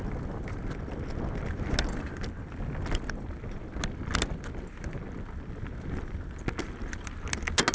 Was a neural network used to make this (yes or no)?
no